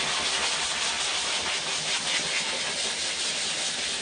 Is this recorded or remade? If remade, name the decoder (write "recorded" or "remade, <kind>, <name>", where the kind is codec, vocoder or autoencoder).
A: recorded